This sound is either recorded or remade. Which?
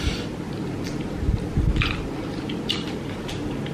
recorded